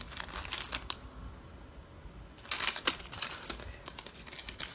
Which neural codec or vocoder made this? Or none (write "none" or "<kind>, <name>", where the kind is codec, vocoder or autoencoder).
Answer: none